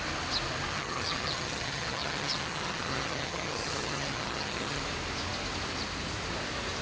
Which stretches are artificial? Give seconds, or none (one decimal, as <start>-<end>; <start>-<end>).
0.7-4.8